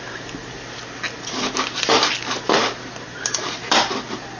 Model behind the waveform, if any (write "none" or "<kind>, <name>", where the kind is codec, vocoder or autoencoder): none